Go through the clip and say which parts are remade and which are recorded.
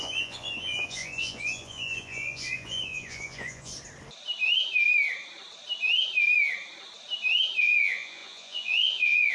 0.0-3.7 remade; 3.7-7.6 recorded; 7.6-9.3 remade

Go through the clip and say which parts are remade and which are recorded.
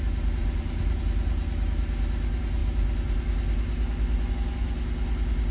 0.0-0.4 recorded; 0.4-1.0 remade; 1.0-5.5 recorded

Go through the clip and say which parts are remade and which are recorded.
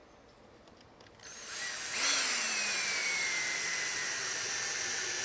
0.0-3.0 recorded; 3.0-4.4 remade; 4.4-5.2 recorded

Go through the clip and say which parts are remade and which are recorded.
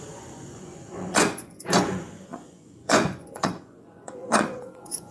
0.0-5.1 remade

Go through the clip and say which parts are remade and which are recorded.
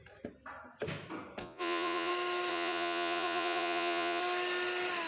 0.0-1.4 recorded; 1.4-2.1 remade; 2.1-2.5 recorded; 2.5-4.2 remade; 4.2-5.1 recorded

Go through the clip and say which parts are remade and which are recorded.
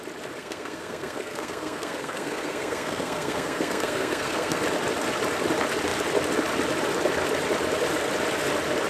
0.0-0.4 recorded; 0.4-4.6 remade; 4.6-8.9 recorded